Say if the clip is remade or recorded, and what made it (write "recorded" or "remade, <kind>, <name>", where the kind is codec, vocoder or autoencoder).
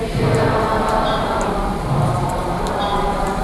remade, vocoder, BigVGAN v2